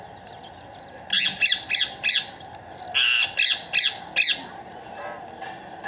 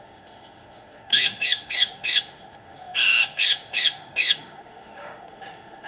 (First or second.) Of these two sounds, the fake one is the second